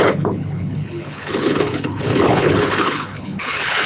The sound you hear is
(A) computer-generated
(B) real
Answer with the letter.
A